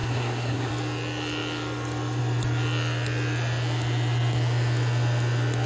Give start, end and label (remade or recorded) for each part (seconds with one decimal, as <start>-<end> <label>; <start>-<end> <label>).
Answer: 0.0-0.7 remade; 0.7-5.7 recorded